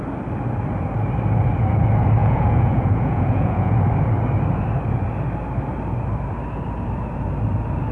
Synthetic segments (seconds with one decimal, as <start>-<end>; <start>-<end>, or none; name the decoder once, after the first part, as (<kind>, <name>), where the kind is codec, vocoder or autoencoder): 2.2-3.8 (vocoder, Vocos)